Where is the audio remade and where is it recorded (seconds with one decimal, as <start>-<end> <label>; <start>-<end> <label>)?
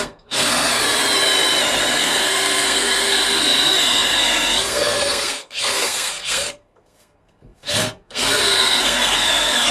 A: 0.0-0.8 remade; 0.8-2.0 recorded; 2.0-9.7 remade